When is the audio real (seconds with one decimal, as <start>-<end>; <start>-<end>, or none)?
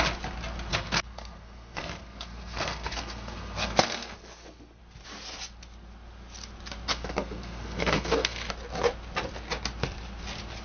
0.0-0.7; 4.8-6.9; 8.5-10.6